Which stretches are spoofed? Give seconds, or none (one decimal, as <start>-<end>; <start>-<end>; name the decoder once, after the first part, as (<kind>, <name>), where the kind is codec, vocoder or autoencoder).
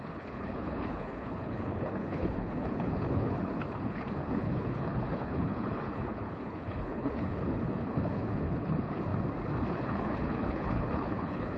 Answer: 0.0-9.1 (codec, HILCodec); 9.7-11.6